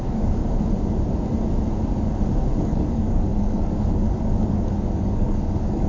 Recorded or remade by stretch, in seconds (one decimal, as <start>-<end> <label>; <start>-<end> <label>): 0.0-0.4 remade; 0.4-2.6 recorded; 2.6-5.9 remade